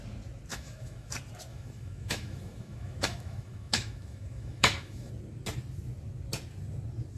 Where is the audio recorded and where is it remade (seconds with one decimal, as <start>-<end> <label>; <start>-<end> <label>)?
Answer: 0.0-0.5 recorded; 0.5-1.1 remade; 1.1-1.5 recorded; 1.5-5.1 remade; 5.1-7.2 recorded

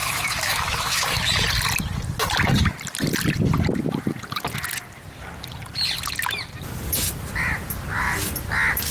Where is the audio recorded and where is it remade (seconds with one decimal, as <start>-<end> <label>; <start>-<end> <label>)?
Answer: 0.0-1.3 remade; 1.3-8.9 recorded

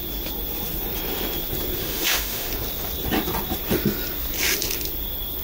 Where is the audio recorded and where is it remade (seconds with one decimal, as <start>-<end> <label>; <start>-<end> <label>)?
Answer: 0.0-1.8 recorded; 1.8-2.5 remade; 2.5-5.4 recorded

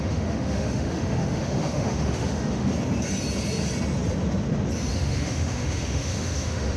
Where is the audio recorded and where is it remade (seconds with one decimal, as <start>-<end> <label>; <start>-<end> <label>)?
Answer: 0.0-2.7 remade; 2.7-4.9 recorded; 4.9-6.8 remade